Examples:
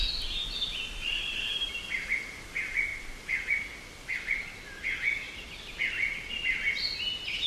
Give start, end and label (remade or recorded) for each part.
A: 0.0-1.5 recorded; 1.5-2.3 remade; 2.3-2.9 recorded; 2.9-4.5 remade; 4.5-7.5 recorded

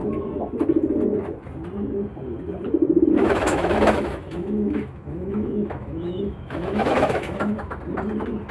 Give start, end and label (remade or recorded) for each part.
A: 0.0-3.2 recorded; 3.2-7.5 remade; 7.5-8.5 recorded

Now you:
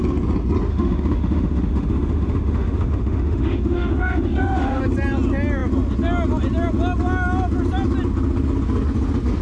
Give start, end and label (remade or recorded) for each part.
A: 0.0-0.7 recorded; 0.7-4.8 remade; 4.8-9.4 recorded